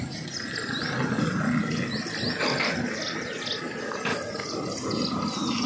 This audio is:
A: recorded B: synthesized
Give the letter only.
A